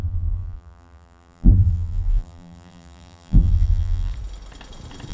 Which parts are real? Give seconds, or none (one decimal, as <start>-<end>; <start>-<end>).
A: 4.1-5.1